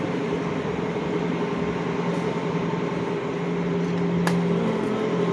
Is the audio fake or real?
real